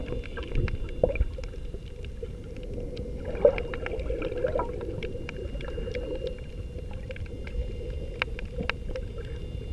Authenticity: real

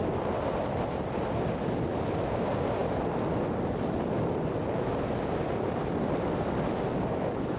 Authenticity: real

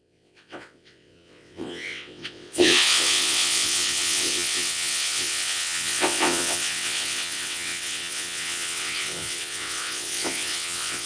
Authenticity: fake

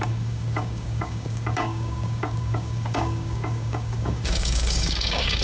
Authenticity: fake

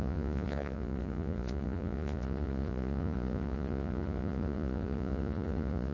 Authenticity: fake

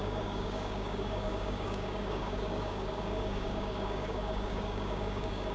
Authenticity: fake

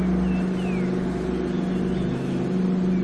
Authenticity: real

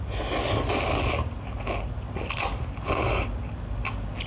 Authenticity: real